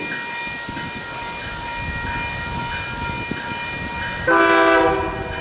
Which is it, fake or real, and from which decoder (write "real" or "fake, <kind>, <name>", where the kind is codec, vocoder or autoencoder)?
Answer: real